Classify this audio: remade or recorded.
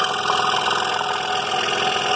recorded